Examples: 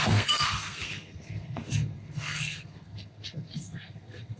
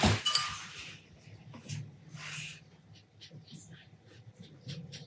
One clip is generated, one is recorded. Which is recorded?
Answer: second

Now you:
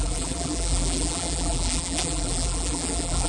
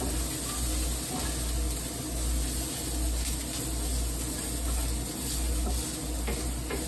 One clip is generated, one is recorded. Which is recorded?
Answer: second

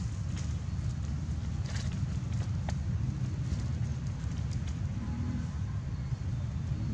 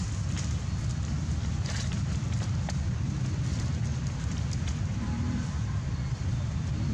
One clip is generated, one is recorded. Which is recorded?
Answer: first